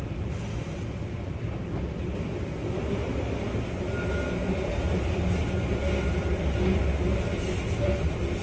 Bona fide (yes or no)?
yes